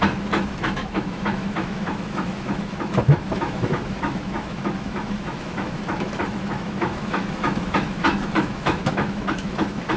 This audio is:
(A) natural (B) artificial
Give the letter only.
B